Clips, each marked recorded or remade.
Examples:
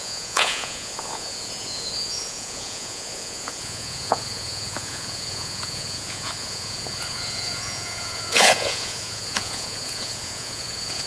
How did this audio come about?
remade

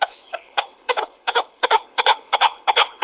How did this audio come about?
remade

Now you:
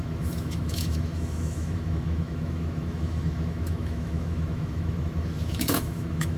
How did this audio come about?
remade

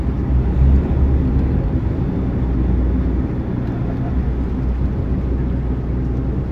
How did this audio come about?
recorded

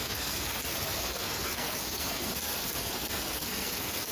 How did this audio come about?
remade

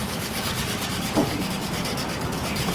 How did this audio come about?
remade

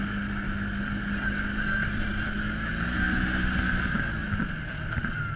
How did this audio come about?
recorded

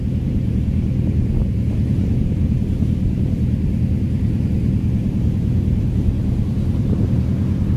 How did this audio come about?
remade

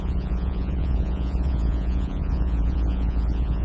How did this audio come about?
remade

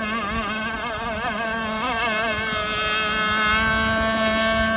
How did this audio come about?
recorded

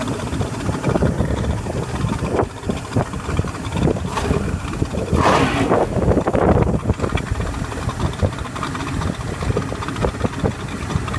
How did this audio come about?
recorded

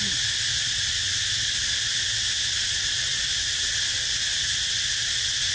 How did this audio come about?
recorded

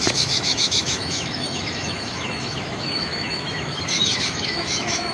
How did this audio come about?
remade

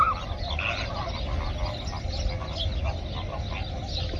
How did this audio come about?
recorded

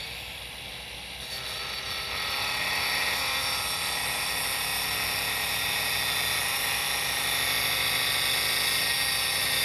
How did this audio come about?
recorded